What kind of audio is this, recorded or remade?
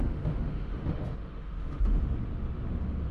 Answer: remade